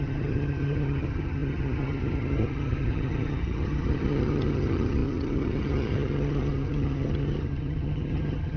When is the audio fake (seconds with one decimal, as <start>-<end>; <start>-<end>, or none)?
0.0-8.6